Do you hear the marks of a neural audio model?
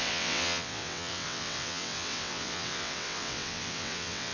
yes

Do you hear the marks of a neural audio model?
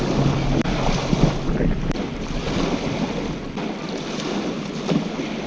no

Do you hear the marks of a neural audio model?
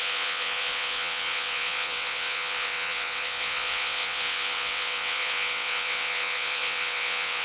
yes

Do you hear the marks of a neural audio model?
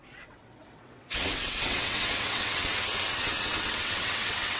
yes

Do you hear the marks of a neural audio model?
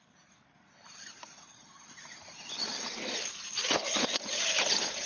no